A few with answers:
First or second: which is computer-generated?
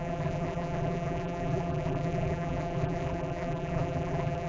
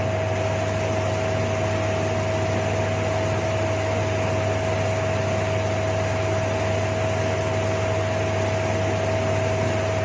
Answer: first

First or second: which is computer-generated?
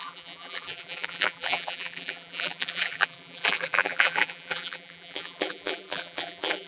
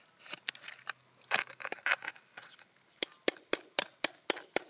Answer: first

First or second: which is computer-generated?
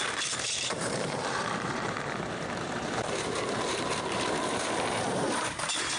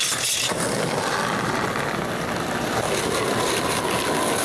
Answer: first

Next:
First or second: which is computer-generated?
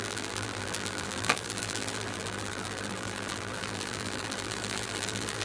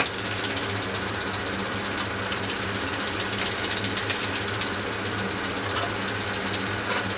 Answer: first